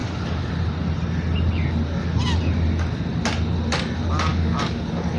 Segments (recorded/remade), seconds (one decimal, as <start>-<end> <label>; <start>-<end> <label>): 0.0-4.3 recorded; 4.3-5.2 remade